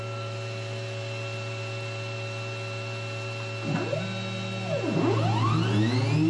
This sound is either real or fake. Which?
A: real